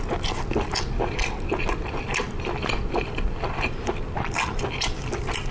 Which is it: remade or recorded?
recorded